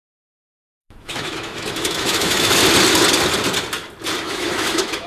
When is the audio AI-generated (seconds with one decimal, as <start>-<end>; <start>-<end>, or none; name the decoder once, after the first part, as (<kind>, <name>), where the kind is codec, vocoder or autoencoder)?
0.0-2.6 (autoencoder, DAC-VAE); 4.2-5.1